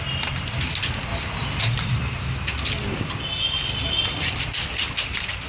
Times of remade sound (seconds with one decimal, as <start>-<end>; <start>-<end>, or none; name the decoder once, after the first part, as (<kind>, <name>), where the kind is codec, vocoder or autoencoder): none